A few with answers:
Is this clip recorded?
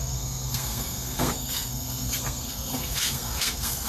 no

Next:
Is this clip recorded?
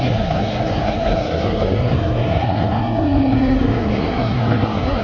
no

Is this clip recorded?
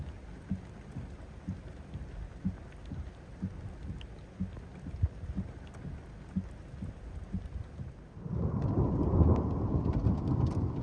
yes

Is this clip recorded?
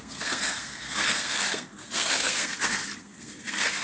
no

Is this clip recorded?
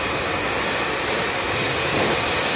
yes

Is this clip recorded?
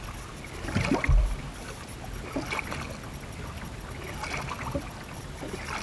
yes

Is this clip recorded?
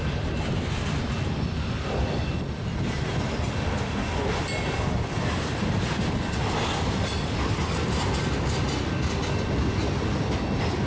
yes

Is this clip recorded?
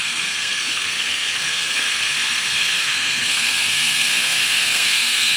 no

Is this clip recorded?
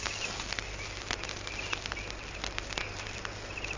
yes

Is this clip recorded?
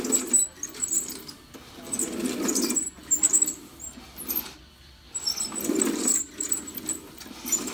yes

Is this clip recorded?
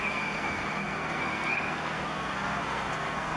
no